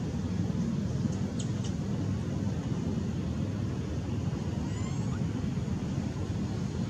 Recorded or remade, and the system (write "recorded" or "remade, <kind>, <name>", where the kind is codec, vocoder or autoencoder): recorded